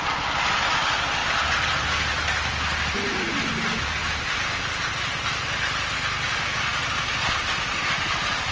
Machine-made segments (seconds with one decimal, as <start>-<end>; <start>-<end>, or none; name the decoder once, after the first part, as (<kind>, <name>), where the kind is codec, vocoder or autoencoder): none